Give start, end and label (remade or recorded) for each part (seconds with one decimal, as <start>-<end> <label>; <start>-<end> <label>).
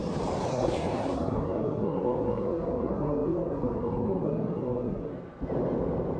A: 0.0-0.5 recorded; 0.5-5.1 remade; 5.1-6.2 recorded